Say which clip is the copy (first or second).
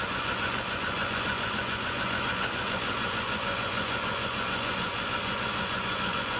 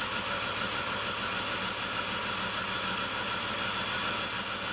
first